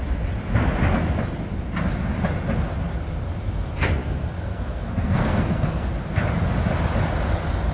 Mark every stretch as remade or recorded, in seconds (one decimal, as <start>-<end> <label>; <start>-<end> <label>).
0.0-4.0 recorded; 4.0-5.9 remade; 5.9-7.7 recorded